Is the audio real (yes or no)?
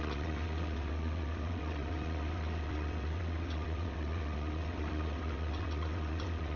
no